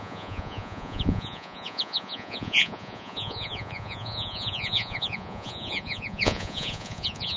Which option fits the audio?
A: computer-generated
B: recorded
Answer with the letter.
A